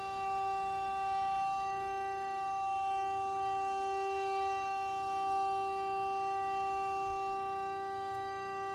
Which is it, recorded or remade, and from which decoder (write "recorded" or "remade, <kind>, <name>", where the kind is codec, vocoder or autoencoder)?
remade, autoencoder, DAC-VAE